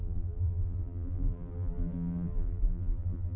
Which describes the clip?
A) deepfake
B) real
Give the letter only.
A